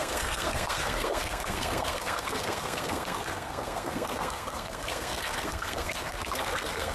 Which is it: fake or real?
fake